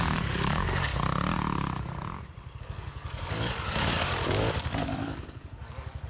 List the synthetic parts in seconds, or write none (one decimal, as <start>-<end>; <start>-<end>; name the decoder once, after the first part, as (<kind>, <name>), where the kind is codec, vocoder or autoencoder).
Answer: 0.0-0.9 (codec, DAC); 2.6-6.1

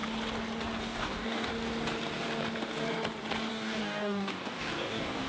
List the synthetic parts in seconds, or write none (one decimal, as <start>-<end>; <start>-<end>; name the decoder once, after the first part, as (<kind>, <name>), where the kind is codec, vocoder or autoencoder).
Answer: 0.8-1.5 (codec, DAC); 3.5-5.3

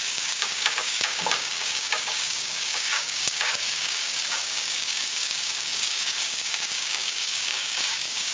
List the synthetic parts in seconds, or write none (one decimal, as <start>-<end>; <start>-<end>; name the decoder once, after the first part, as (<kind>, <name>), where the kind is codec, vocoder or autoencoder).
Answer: 0.0-8.3 (codec, DAC)